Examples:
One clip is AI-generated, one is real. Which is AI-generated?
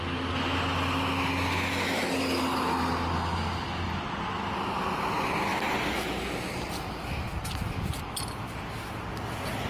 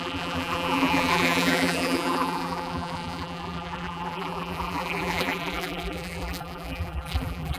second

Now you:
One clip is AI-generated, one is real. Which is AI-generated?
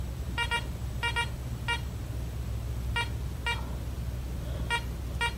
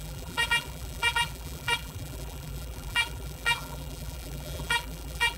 second